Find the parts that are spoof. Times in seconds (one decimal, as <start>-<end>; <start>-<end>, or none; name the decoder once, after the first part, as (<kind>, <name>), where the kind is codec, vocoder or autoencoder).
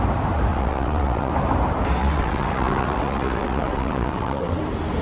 0.5-1.3 (vocoder, WaveNeXt); 2.0-4.6